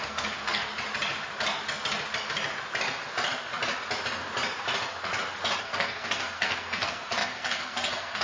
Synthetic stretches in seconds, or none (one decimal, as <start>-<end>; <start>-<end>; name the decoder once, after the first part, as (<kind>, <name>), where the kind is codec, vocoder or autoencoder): 0.0-0.7 (codec, SNAC); 5.6-8.2

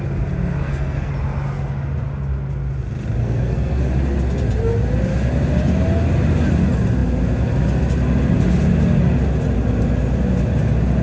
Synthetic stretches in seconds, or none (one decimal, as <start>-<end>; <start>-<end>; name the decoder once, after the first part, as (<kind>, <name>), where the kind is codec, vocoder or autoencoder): 0.6-1.1 (codec, SNAC); 3.2-3.8

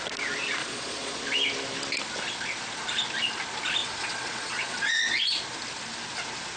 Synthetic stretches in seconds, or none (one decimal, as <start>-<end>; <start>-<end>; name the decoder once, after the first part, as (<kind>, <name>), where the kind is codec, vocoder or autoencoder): 0.6-1.2 (vocoder, Vocos); 3.8-5.2

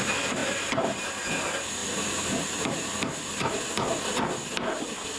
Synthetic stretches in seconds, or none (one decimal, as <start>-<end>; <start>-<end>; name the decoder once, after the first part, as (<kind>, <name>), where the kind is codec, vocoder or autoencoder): 0.4-1.2 (vocoder, BigVGAN v2); 1.8-3.7

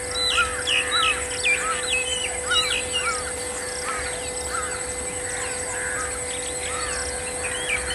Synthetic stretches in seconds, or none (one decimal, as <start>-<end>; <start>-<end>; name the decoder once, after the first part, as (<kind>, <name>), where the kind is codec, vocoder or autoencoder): none

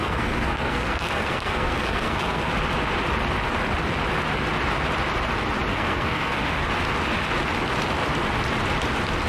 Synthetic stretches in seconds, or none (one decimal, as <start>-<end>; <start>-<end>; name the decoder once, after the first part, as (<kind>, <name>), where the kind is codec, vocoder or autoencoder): 0.0-2.5 (codec, SNAC); 5.7-6.7